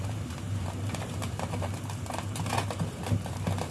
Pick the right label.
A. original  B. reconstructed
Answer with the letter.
B